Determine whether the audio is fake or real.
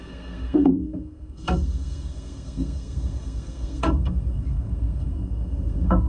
fake